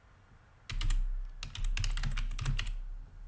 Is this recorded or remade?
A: recorded